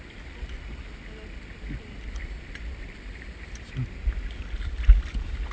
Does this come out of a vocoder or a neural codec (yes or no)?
no